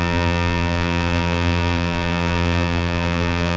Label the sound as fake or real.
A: fake